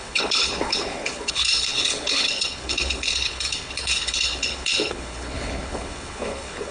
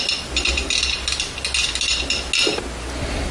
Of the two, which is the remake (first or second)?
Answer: first